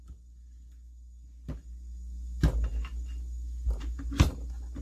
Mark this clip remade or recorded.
recorded